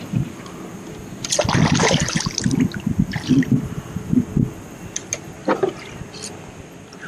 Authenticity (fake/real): real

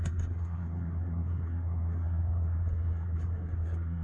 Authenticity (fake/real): fake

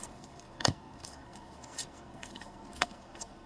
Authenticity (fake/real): fake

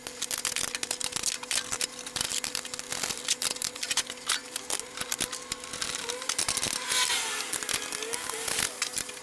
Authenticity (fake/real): real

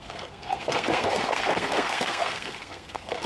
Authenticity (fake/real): fake